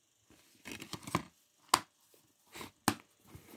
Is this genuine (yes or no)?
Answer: yes